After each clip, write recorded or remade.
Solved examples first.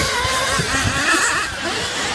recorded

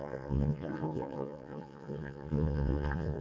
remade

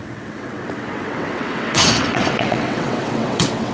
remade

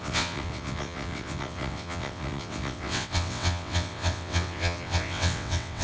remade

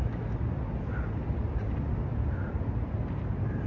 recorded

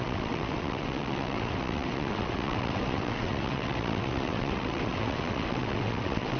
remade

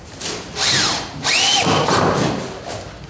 recorded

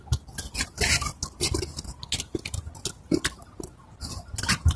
recorded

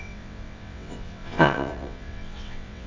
remade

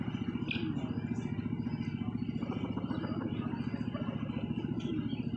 recorded